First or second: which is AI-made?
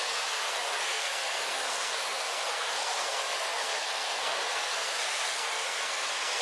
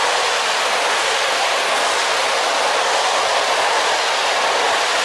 first